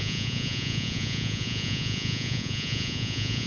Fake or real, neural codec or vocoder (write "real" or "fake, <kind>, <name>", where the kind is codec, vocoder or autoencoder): fake, vocoder, Vocos